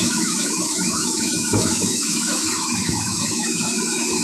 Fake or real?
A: fake